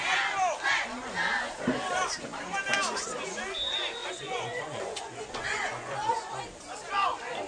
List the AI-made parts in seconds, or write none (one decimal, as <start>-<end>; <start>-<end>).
4.0-6.3